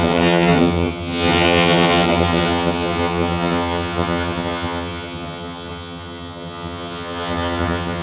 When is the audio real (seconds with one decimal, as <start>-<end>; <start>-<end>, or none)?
none